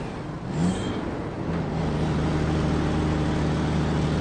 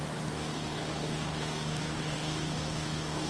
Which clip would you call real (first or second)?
first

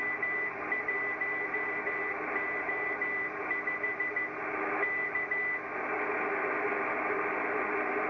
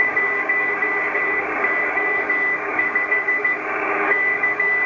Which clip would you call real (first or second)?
first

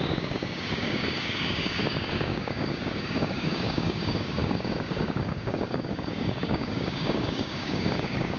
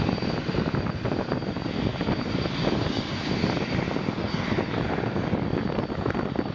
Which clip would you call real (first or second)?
second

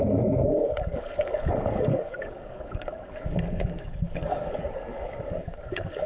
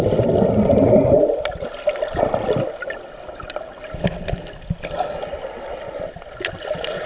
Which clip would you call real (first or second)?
second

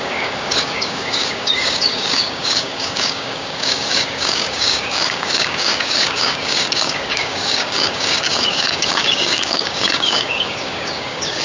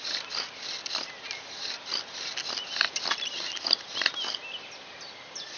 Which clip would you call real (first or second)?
second